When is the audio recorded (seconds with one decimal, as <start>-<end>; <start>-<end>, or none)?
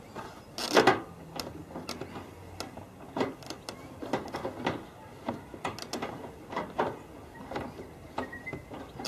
0.0-9.1